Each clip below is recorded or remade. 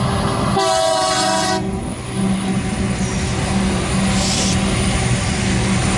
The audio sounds recorded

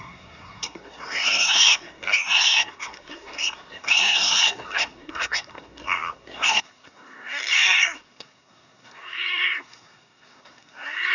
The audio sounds remade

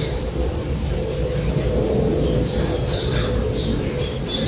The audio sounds recorded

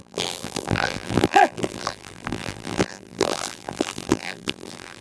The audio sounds remade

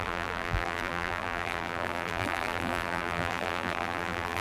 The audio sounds remade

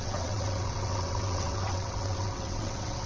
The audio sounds remade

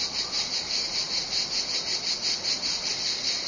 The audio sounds recorded